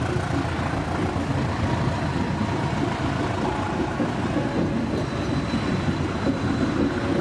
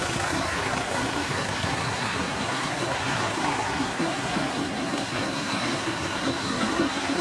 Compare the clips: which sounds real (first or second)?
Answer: first